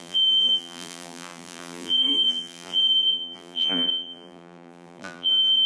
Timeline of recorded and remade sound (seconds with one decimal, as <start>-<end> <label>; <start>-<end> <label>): 0.0-5.7 remade